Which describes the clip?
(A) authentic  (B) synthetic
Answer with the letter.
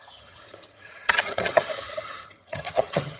B